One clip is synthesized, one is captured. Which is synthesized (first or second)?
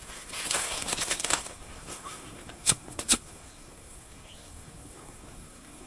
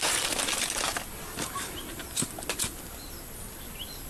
first